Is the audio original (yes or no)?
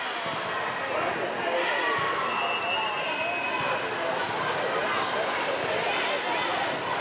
yes